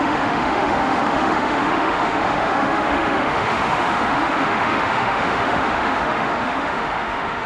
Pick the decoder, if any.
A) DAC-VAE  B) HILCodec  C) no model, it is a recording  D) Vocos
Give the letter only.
A